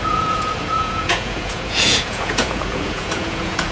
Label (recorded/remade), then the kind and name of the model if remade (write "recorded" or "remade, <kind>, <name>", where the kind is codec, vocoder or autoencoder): remade, vocoder, Vocos